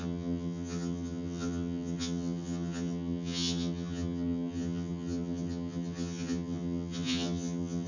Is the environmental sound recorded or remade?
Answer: remade